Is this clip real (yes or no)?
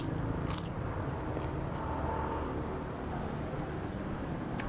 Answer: yes